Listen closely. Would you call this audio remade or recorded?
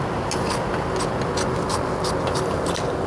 recorded